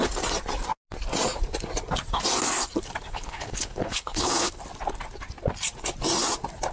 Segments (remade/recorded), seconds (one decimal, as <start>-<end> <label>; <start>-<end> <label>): 0.0-3.1 recorded; 3.1-4.6 remade; 4.6-6.7 recorded